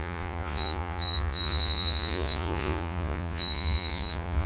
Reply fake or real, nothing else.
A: fake